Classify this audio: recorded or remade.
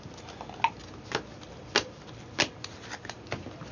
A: recorded